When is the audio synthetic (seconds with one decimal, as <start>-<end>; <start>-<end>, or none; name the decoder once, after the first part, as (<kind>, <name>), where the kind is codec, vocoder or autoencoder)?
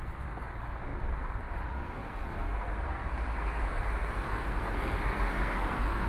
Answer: 0.0-6.1 (codec, SNAC)